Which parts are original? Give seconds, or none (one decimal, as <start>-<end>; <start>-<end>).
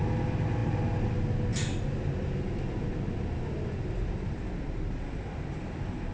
0.0-6.1